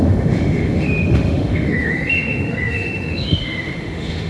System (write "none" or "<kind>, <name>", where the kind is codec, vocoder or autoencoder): autoencoder, DAC-VAE